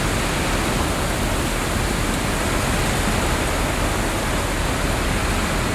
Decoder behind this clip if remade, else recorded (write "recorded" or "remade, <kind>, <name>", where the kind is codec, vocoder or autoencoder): recorded